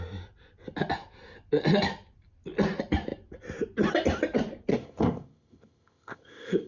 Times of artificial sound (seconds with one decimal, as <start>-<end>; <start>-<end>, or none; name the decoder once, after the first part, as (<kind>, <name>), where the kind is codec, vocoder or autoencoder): 4.7-6.7 (codec, ZipCodec)